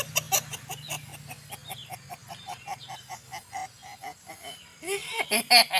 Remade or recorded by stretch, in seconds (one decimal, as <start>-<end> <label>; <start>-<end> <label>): 0.0-5.8 recorded